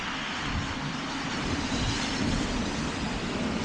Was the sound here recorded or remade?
remade